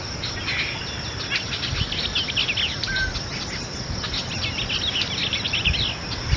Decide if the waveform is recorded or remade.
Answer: recorded